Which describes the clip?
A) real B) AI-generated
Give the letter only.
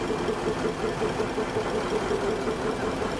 A